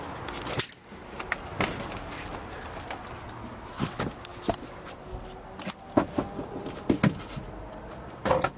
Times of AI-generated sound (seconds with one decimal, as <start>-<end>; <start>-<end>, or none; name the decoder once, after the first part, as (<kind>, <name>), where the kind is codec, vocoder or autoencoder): none